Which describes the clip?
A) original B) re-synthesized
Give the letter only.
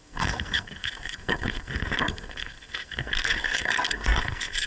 B